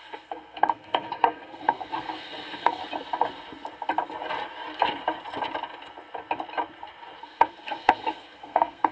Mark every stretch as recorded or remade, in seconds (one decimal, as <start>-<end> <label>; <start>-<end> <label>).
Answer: 0.0-2.8 remade; 2.8-7.2 recorded; 7.2-8.9 remade